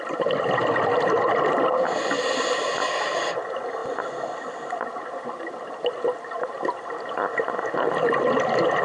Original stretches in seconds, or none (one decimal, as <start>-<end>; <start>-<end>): 0.0-8.8